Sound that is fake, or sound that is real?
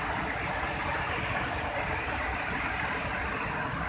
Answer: real